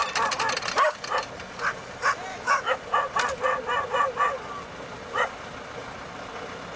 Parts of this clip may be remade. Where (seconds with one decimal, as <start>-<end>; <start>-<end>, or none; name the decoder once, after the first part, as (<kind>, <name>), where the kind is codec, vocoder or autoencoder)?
2.3-2.8 (autoencoder, DAC-VAE)